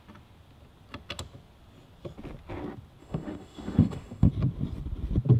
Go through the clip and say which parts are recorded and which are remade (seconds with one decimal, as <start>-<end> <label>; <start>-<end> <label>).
0.0-3.0 recorded; 3.0-4.3 remade; 4.3-5.4 recorded